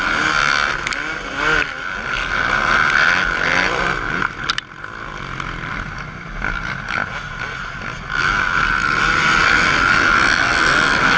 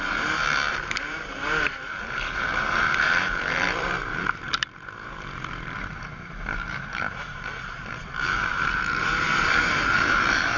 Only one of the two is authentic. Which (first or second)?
first